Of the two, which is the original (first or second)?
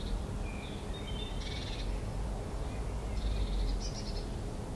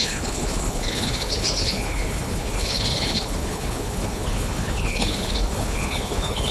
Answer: first